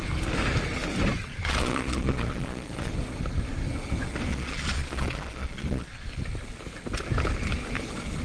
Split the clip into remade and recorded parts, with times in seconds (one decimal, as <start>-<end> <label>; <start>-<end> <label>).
0.0-1.3 recorded; 1.3-2.9 remade; 2.9-4.3 recorded; 4.3-6.1 remade; 6.1-8.2 recorded